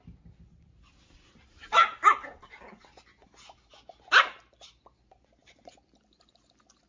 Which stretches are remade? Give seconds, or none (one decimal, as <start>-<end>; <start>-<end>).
none